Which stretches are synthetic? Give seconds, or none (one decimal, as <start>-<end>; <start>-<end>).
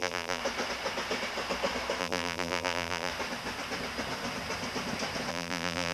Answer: 0.0-0.4; 2.0-3.1; 5.3-5.9